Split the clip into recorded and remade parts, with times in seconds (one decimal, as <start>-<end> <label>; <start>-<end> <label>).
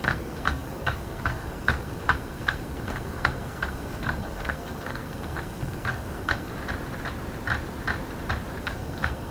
0.0-6.5 remade; 6.5-8.6 recorded; 8.6-9.3 remade